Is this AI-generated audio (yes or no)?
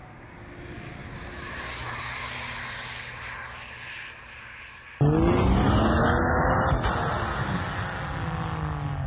no